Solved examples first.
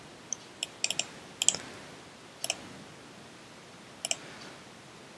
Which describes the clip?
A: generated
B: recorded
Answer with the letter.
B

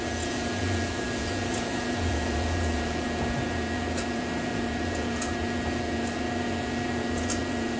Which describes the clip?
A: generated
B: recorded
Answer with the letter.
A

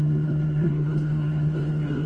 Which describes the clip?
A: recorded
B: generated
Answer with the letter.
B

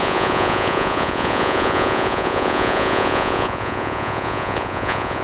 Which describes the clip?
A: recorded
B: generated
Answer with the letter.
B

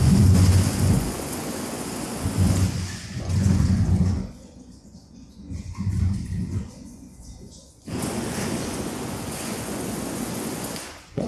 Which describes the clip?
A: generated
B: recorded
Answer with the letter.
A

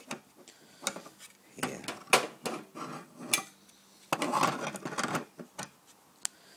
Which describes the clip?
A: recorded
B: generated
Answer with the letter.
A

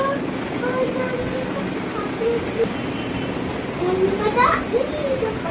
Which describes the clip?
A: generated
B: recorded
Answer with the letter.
B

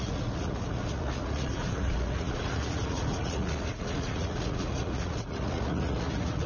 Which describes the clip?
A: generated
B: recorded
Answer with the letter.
A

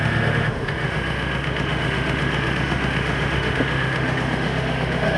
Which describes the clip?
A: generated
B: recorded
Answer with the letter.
A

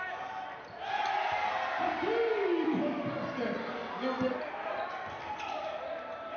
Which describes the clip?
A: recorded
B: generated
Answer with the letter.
A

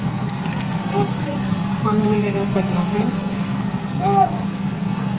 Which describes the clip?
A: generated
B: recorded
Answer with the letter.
A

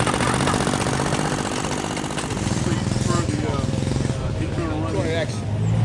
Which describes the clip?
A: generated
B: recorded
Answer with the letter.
B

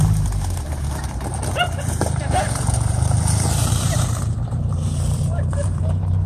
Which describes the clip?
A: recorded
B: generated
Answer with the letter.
B